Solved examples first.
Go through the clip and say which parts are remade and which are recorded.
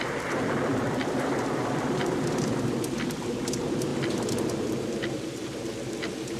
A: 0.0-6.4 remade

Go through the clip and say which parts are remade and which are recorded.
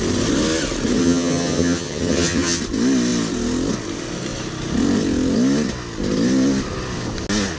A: 0.0-1.0 recorded; 1.0-2.6 remade; 2.6-7.6 recorded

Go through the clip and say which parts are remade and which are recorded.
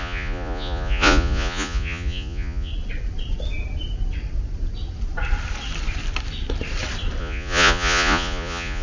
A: 0.0-2.7 remade; 2.7-7.2 recorded; 7.2-8.8 remade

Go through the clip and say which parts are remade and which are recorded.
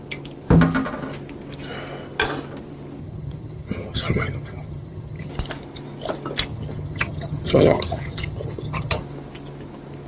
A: 0.0-3.0 recorded; 3.0-5.3 remade; 5.3-6.5 recorded; 6.5-9.0 remade; 9.0-10.1 recorded